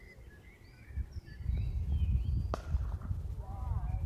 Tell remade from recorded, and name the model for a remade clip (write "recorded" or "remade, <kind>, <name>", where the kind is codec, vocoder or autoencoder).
recorded